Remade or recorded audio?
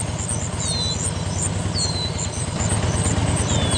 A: recorded